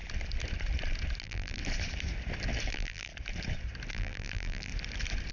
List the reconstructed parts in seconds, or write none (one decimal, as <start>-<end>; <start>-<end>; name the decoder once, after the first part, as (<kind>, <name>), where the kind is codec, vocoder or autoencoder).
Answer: 1.2-1.6 (vocoder, BigVGAN v2); 2.7-3.1; 3.9-4.7